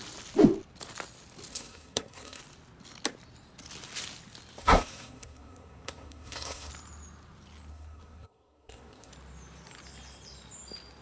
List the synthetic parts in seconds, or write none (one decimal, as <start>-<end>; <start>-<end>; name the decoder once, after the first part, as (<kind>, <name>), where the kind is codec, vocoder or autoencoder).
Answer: 1.5-2.4 (codec, SNAC); 4.6-6.7; 7.7-9.1